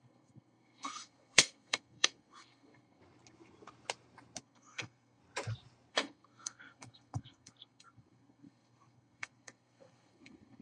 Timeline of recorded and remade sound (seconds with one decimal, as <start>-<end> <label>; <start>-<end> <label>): 0.0-3.0 remade; 3.0-4.4 recorded; 4.4-5.2 remade; 5.2-5.9 recorded; 5.9-10.6 remade